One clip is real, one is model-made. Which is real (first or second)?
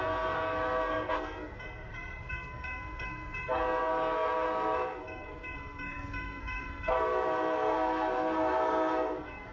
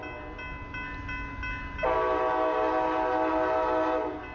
second